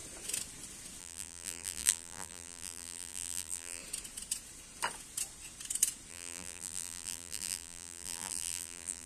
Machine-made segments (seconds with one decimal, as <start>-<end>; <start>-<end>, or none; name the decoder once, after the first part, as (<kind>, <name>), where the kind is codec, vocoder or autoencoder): 1.0-3.8 (vocoder, BigVGAN v2); 6.1-9.1